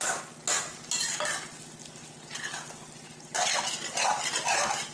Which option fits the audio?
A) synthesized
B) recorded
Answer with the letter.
B